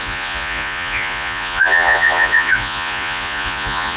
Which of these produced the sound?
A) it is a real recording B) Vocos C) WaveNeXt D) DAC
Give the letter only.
B